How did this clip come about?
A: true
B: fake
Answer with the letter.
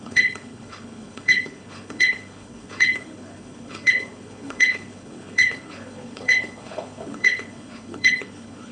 B